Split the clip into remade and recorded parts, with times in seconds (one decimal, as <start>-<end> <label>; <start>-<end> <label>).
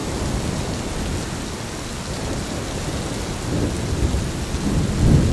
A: 0.0-5.3 recorded